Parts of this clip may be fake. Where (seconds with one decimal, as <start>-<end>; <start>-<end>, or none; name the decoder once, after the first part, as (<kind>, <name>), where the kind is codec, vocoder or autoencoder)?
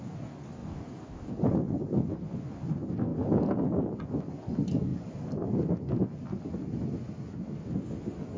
0.6-1.3 (vocoder, BigVGAN v2); 4.9-6.0